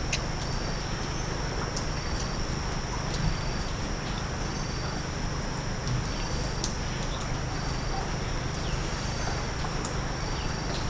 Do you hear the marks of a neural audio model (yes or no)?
no